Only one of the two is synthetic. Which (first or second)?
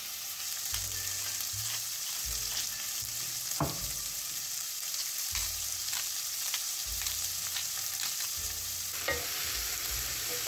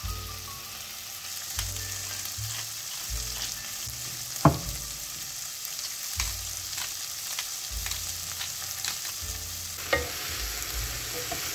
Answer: first